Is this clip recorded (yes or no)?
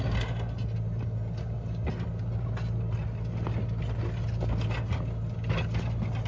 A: yes